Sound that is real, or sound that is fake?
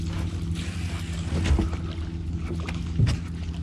real